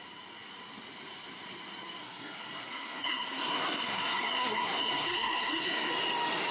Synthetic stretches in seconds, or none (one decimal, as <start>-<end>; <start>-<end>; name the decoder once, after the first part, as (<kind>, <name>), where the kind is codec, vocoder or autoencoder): 2.0-5.9 (codec, SNAC)